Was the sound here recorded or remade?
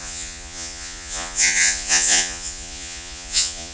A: remade